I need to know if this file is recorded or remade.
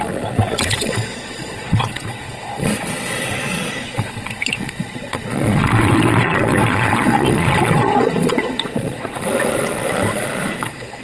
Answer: remade